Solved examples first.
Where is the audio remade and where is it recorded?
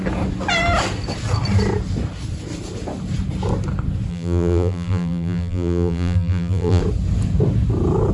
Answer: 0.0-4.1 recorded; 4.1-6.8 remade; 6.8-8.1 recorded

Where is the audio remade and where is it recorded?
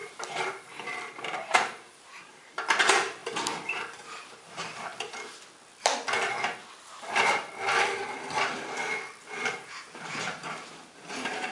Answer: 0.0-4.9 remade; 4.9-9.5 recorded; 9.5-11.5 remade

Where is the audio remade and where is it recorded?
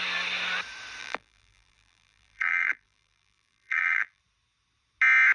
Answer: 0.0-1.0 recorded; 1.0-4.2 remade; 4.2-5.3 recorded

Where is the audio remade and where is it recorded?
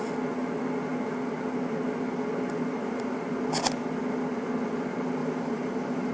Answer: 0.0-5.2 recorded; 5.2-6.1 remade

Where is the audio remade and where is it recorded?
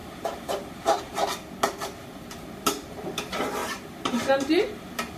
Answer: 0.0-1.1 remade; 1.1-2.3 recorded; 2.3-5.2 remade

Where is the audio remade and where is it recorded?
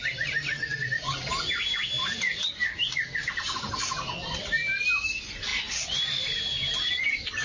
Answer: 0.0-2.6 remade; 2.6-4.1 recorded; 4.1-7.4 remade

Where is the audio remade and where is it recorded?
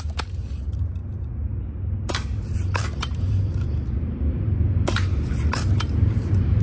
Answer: 0.0-1.0 remade; 1.0-2.1 recorded; 2.1-6.6 remade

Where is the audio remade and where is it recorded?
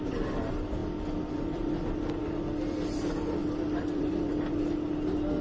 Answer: 0.0-3.4 recorded; 3.4-4.6 remade; 4.6-5.4 recorded